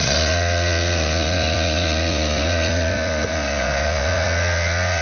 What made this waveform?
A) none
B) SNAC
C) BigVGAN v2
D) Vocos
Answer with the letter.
D